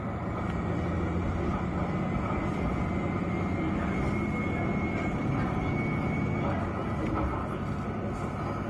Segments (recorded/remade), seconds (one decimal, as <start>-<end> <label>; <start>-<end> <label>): 0.0-5.2 recorded; 5.2-5.7 remade; 5.7-8.7 recorded